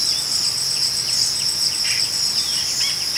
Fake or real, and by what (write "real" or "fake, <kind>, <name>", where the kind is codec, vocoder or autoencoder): real